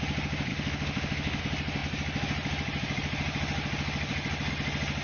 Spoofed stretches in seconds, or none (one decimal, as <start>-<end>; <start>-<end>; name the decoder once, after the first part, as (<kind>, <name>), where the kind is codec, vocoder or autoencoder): 0.5-1.4 (autoencoder, DAC-VAE)